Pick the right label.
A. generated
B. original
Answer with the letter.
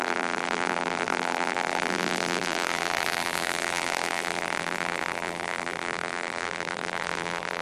A